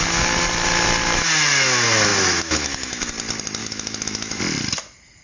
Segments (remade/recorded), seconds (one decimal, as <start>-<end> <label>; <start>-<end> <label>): 0.0-2.1 recorded; 2.1-3.1 remade; 3.1-3.6 recorded; 3.6-4.4 remade; 4.4-5.2 recorded